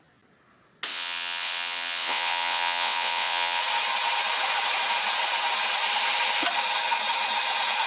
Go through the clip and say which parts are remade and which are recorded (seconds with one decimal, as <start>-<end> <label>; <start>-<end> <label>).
0.0-0.9 recorded; 0.9-3.6 remade; 3.6-7.9 recorded